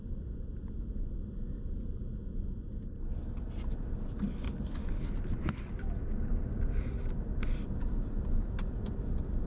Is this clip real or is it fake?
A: real